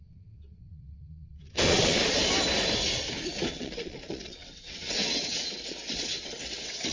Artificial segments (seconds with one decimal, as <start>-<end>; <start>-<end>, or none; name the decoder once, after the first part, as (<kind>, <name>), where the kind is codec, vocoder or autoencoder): 0.0-2.0 (vocoder, WaveNeXt); 3.5-6.9